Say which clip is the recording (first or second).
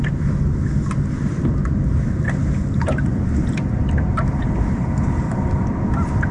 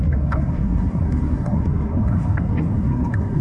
first